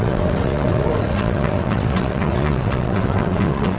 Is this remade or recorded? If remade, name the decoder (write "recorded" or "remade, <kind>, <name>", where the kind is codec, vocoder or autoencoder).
remade, vocoder, WaveNeXt